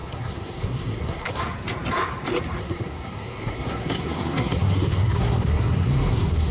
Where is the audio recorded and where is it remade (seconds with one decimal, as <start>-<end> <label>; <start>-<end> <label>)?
0.0-1.4 remade; 1.4-2.6 recorded; 2.6-6.5 remade